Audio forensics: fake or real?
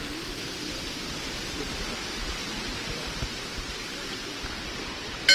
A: real